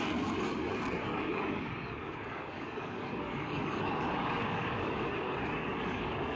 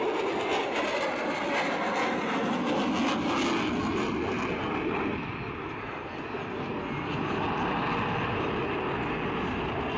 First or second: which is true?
second